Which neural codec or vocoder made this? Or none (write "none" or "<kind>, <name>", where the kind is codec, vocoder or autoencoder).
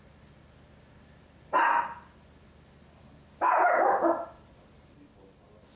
none